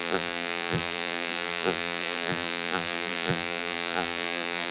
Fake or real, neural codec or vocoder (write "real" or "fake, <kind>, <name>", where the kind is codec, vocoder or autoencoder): fake, vocoder, BigVGAN v2